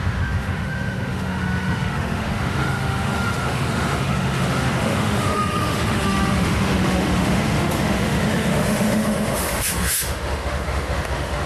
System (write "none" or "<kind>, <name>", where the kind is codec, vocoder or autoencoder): autoencoder, DAC-VAE